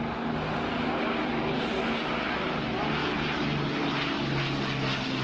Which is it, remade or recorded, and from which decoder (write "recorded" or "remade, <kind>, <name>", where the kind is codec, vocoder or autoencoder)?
recorded